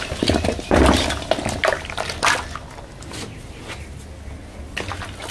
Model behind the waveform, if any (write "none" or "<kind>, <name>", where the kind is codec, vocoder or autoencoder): none